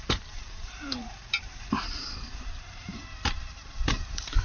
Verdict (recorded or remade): remade